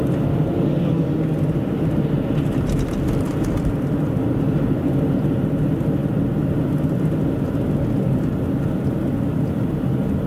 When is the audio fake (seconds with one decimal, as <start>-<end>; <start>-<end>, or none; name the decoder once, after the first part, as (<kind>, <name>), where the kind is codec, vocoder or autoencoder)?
none